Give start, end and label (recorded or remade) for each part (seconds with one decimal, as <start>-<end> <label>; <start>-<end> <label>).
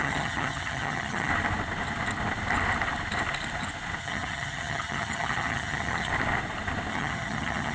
0.0-1.3 remade; 1.3-4.0 recorded; 4.0-6.1 remade; 6.1-6.9 recorded; 6.9-7.7 remade